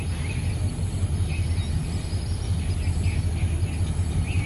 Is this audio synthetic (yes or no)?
no